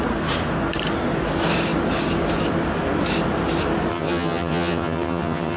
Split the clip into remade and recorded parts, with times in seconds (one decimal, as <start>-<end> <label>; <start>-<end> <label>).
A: 0.0-3.9 recorded; 3.9-5.6 remade